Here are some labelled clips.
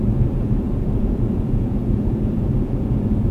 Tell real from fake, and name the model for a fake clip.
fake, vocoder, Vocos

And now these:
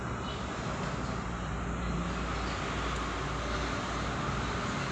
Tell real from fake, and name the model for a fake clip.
real